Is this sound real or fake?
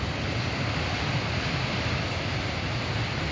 real